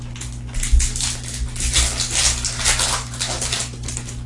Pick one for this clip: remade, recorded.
recorded